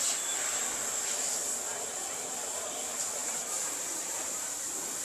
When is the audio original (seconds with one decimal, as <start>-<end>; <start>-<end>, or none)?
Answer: 0.0-3.2; 4.6-5.0